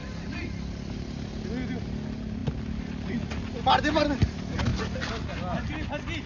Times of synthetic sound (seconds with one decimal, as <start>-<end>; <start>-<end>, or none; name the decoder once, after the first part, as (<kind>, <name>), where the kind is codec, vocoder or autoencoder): none